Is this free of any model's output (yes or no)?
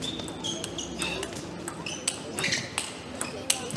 yes